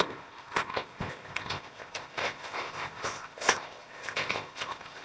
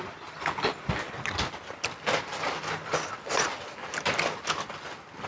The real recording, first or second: second